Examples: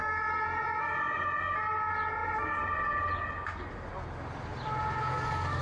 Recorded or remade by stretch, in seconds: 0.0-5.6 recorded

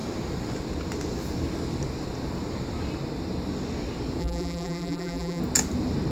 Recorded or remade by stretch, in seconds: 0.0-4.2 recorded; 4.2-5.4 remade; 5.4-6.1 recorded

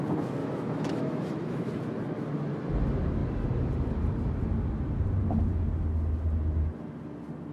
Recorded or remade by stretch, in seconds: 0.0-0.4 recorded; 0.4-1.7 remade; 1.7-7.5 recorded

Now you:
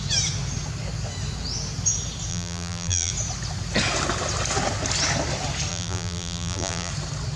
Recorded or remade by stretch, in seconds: 0.0-2.3 recorded; 2.3-3.1 remade; 3.1-5.7 recorded; 5.7-6.9 remade; 6.9-7.4 recorded

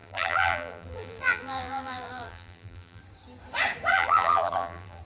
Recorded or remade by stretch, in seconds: 0.0-3.0 remade; 3.0-3.9 recorded; 3.9-5.0 remade

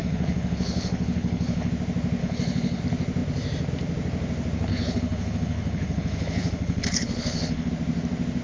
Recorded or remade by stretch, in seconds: 0.0-1.7 remade; 1.7-2.2 recorded; 2.2-2.8 remade; 2.8-4.7 recorded; 4.7-7.7 remade; 7.7-8.4 recorded

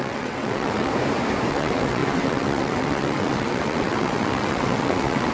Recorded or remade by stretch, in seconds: 0.0-0.9 remade; 0.9-1.5 recorded; 1.5-5.3 remade